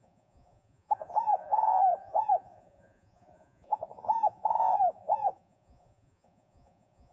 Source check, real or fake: fake